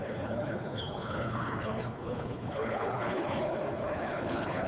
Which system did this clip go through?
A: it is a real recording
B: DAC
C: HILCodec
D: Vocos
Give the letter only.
C